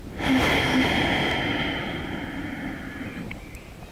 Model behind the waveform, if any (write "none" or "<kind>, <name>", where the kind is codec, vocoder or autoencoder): vocoder, BigVGAN v2